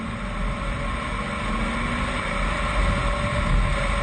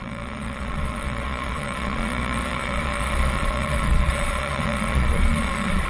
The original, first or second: first